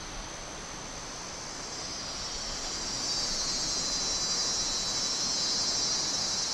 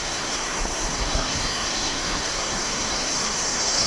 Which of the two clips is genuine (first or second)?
first